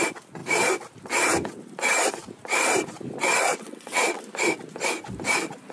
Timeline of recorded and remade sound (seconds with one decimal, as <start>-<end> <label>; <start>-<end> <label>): 0.0-3.5 recorded; 3.5-4.2 remade; 4.2-5.7 recorded